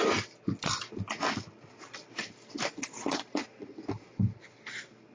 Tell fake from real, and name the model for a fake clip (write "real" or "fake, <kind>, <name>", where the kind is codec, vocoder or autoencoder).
real